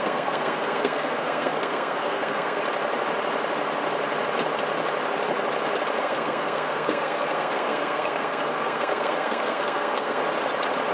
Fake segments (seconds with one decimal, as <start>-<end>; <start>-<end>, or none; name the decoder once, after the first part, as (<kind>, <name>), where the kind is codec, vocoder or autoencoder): 0.0-2.6 (codec, SNAC); 6.0-10.2